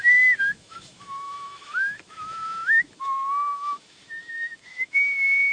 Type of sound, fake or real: fake